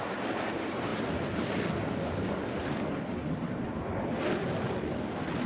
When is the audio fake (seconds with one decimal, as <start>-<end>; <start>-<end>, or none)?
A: 0.9-4.2

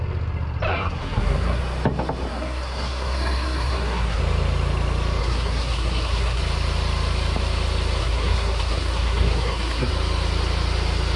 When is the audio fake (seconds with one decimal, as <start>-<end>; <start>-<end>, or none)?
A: 0.7-1.6; 2.3-4.2; 5.2-6.4; 8.0-9.9

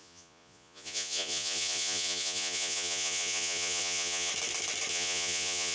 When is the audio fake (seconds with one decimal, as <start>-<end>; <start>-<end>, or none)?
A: 0.0-4.3; 4.9-5.7

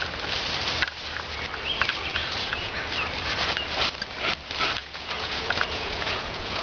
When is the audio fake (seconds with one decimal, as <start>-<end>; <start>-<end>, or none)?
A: 2.1-2.8; 4.8-6.6